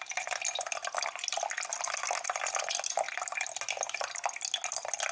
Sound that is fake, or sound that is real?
real